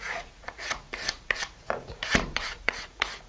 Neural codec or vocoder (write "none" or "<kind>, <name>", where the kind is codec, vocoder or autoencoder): vocoder, Vocos